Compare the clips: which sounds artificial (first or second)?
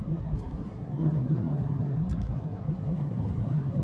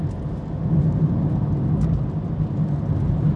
first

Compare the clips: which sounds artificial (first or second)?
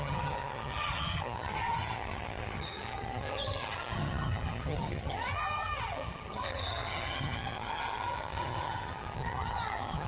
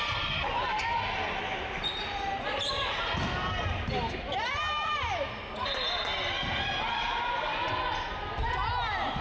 first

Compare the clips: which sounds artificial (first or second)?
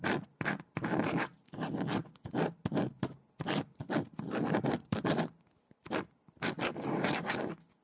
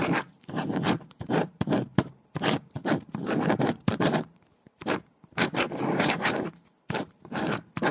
second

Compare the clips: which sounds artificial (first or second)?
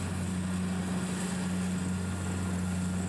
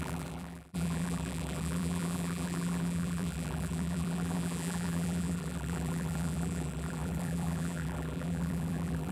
second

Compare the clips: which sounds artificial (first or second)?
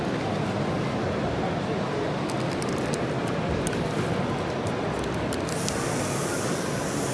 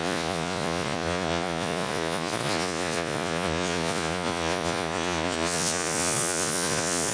second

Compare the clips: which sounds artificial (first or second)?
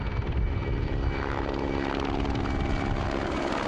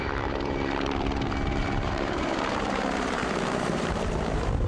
second